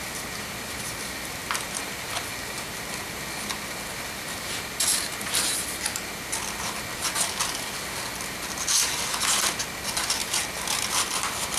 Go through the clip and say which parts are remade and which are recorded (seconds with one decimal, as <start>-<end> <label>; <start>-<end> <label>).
0.0-11.6 recorded